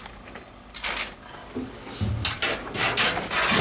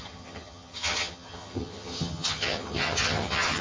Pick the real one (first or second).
first